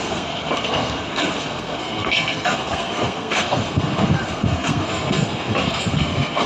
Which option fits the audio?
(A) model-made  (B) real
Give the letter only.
A